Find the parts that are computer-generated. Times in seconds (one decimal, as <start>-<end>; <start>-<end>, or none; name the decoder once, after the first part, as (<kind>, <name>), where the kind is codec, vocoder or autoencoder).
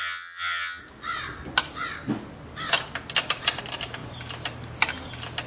0.0-0.8 (vocoder, HiFi-GAN)